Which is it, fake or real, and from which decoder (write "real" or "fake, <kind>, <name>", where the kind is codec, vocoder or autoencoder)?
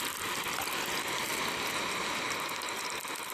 real